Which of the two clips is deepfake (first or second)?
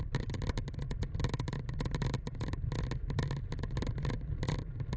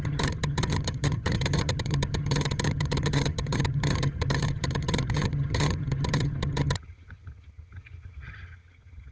second